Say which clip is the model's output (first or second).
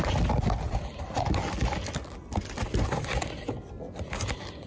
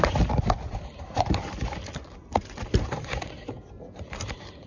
second